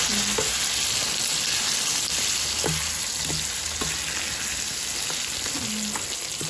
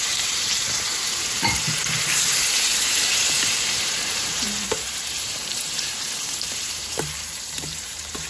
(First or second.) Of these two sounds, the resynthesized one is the second